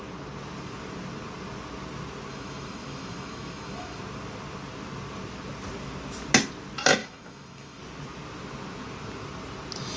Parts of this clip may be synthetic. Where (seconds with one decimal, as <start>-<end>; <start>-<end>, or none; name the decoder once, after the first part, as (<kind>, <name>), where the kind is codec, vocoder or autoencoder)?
2.3-4.0 (autoencoder, DAC-VAE); 7.0-7.8